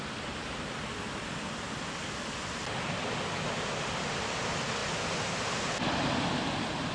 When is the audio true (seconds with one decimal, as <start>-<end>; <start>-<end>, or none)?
0.0-6.9